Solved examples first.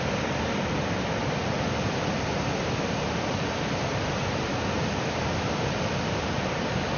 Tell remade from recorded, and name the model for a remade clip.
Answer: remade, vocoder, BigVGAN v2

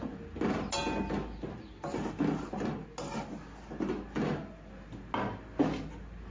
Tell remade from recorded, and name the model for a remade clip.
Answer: recorded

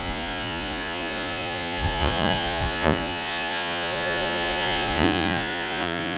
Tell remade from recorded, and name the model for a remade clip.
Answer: remade, vocoder, Vocos